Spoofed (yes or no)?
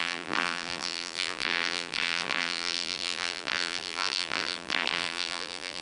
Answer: yes